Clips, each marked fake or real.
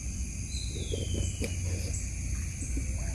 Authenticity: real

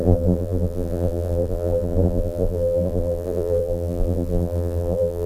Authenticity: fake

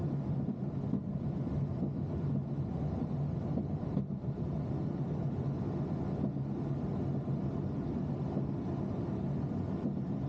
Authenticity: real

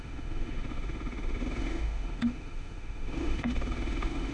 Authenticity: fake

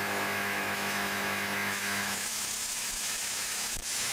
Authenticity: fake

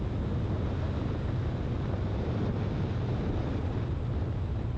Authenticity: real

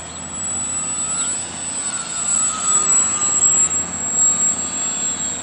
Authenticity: real